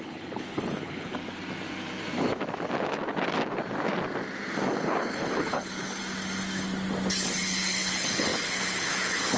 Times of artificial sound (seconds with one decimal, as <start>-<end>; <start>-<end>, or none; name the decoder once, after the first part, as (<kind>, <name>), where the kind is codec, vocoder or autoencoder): 0.0-1.2 (codec, HILCodec); 4.7-6.0; 7.4-9.4

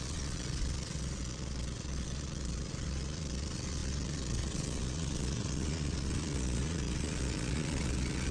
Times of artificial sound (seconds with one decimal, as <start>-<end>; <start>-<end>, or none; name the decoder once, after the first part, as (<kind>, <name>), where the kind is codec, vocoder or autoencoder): 0.0-8.3 (vocoder, Vocos)

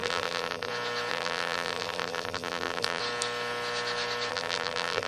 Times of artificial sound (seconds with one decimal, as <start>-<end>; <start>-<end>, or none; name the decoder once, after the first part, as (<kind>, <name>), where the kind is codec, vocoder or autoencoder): 0.0-0.7 (vocoder, BigVGAN v2); 1.1-3.0; 4.3-5.1